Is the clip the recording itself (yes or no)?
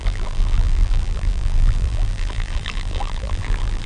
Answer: no